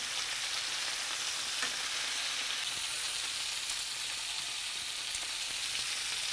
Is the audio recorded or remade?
recorded